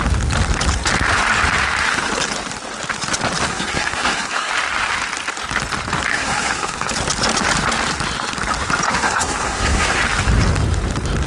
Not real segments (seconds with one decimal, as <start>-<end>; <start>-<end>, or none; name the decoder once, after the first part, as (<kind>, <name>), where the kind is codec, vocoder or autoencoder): 3.5-4.5 (codec, SNAC); 6.1-6.9; 8.9-10.0